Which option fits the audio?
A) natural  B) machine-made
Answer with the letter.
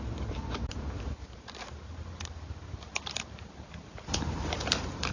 B